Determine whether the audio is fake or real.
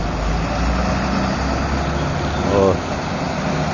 real